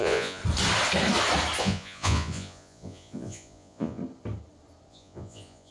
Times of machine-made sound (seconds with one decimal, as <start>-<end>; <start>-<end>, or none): 0.0-0.4; 1.6-4.0; 4.9-5.7